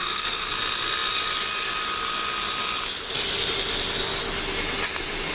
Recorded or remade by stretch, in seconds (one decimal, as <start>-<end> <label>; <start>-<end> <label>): 0.0-0.5 remade; 0.5-5.3 recorded